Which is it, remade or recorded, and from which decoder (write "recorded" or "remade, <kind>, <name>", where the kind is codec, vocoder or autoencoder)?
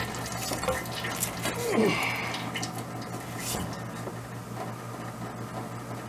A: recorded